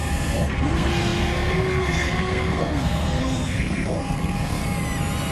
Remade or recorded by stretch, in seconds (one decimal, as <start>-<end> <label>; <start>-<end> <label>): 0.0-4.6 remade; 4.6-5.3 recorded